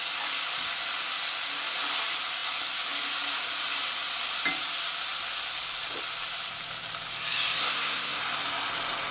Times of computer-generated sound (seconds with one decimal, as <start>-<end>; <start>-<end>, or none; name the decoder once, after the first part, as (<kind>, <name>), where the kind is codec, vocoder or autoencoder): 7.6-8.2 (codec, SNAC)